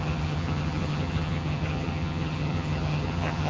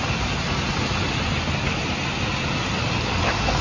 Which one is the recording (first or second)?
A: second